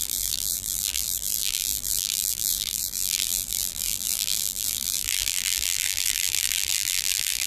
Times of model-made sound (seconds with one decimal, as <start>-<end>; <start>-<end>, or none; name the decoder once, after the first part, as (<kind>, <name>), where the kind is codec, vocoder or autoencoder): 0.0-7.5 (vocoder, BigVGAN v2)